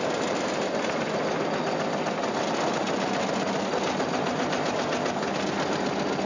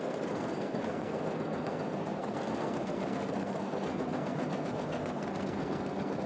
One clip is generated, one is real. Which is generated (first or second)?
second